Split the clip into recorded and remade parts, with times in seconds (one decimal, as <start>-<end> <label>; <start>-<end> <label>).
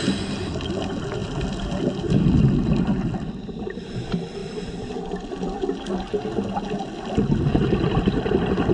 0.0-8.7 recorded